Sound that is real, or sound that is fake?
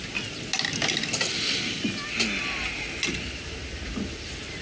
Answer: real